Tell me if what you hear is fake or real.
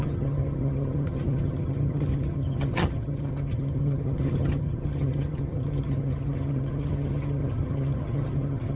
fake